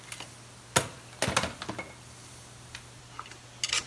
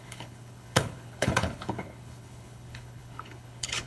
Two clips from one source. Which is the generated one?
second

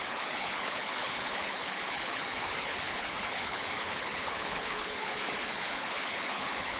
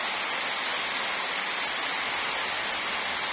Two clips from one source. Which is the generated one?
first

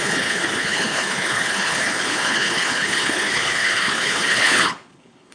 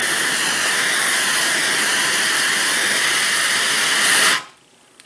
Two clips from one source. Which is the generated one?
first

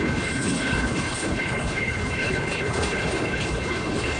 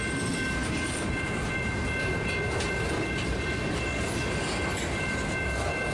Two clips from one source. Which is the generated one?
first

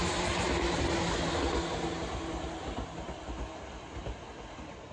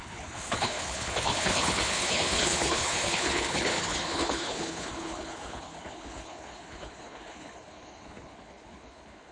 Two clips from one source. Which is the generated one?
second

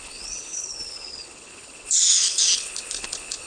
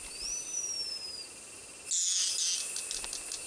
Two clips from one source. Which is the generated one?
first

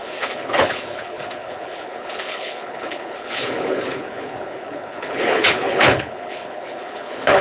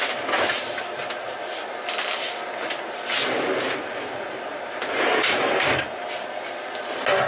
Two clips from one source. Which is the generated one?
first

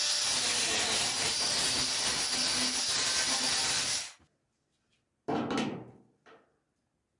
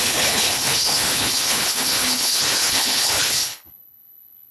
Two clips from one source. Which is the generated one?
second